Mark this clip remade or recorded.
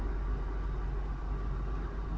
recorded